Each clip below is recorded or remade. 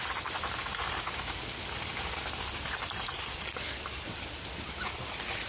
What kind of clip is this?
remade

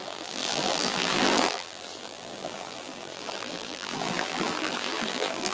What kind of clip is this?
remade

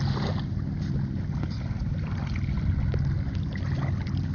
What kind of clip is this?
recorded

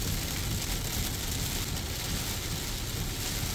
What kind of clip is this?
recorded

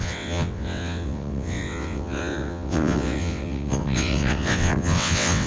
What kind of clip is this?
remade